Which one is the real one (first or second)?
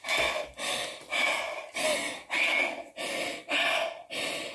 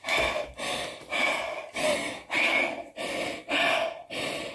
first